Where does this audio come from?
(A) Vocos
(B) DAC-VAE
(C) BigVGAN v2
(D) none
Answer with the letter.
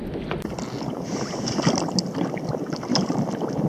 D